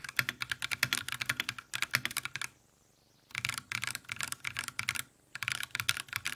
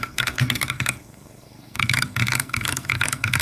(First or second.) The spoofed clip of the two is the second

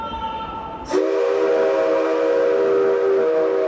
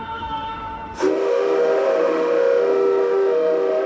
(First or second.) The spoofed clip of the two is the second